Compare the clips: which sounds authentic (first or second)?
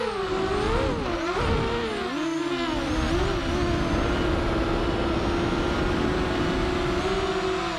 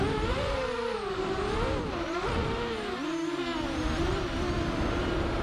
first